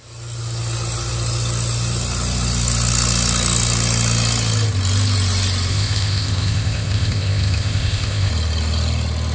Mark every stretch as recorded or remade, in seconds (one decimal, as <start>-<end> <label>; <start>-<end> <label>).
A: 0.0-5.7 recorded; 5.7-8.3 remade; 8.3-9.3 recorded